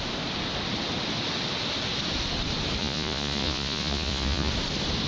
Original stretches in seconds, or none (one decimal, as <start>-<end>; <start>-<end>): 0.0-2.8; 4.5-5.1